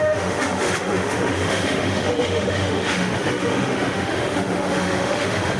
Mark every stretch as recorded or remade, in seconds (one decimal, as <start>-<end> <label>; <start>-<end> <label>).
0.0-5.6 remade